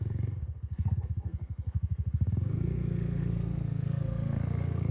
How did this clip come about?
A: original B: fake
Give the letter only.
B